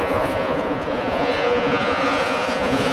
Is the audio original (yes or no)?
no